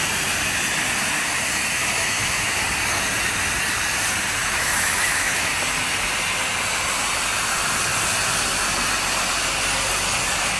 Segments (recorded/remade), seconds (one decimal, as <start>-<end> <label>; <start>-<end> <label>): 0.0-1.8 recorded; 1.8-2.6 remade; 2.6-4.4 recorded; 4.4-5.5 remade; 5.5-10.6 recorded